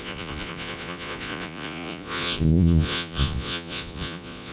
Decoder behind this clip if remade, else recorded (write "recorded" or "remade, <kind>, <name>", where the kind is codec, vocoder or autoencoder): remade, vocoder, Vocos